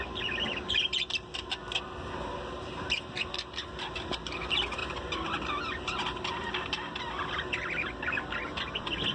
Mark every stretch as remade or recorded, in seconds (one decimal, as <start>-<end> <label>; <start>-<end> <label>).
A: 0.0-9.1 remade